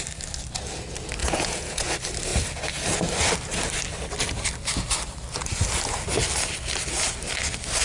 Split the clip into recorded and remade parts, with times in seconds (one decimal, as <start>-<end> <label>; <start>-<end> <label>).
0.0-1.2 recorded; 1.2-1.9 remade; 1.9-7.8 recorded